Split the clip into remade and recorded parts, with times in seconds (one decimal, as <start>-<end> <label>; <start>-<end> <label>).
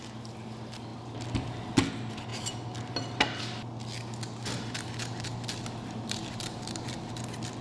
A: 0.0-7.6 recorded